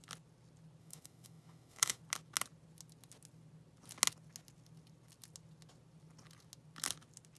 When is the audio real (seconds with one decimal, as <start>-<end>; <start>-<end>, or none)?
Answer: 0.0-0.8; 2.0-7.4